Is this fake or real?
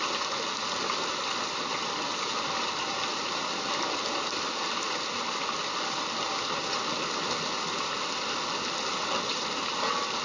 real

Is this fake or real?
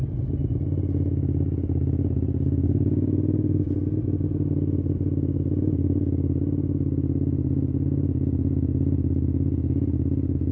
real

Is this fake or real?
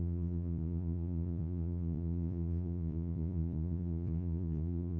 fake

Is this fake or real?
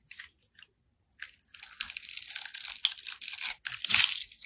real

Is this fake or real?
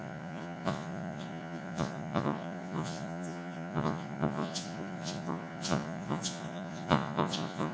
fake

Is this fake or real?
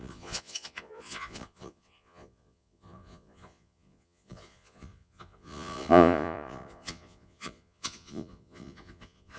fake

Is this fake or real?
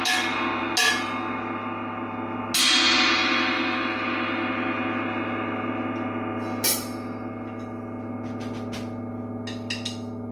real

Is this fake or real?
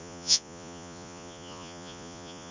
fake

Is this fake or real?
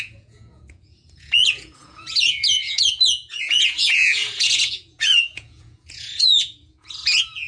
fake